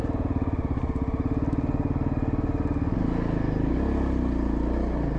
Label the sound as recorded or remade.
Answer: recorded